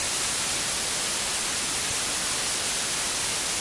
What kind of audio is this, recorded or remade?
recorded